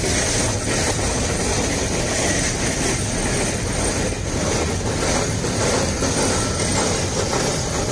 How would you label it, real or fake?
real